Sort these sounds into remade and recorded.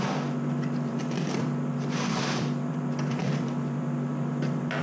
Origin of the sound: remade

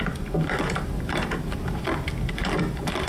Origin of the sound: remade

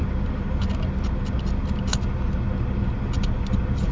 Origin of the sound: recorded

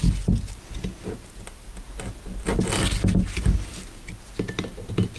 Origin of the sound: recorded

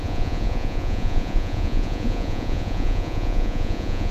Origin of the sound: remade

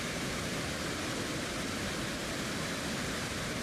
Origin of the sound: recorded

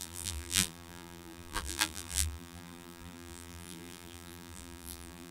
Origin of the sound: remade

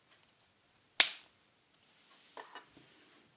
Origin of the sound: recorded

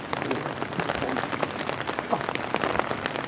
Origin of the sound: recorded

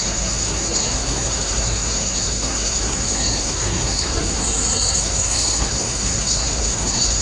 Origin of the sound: remade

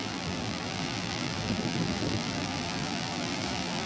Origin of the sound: remade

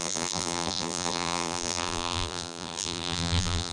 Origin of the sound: remade